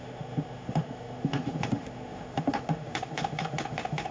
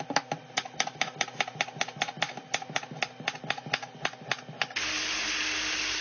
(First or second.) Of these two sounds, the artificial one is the first